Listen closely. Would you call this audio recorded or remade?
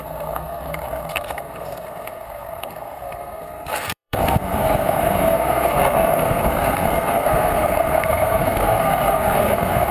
remade